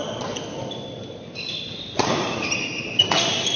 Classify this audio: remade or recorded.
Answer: recorded